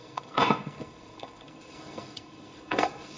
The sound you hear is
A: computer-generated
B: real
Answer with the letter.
A